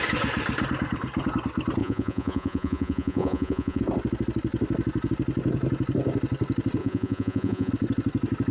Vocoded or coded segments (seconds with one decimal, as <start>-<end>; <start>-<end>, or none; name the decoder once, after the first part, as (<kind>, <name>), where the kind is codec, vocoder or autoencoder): 1.8-3.8 (vocoder, Vocos); 6.8-7.7

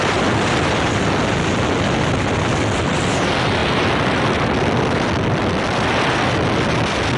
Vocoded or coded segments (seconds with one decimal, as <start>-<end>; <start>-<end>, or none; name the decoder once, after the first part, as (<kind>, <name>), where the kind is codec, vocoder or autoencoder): none

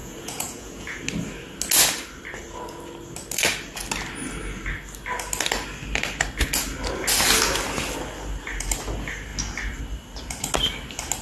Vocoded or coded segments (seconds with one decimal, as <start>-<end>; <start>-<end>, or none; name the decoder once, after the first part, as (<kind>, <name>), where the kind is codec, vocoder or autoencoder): 0.0-1.0 (vocoder, Vocos)

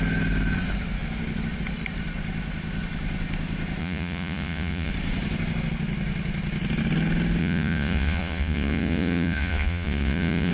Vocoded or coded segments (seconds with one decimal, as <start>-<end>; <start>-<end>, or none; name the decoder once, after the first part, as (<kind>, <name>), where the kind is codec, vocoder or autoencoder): 3.8-4.9 (vocoder, Vocos); 7.4-10.5

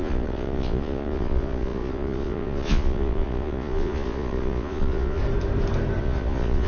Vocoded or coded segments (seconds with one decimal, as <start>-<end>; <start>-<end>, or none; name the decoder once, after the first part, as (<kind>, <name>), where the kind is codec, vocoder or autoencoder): 0.0-5.2 (vocoder, Vocos); 6.0-6.7

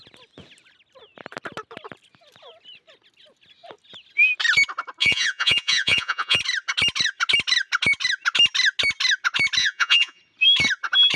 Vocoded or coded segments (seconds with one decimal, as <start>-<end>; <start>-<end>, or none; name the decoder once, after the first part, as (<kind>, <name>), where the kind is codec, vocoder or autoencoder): 5.0-6.4 (vocoder, Vocos); 9.6-10.2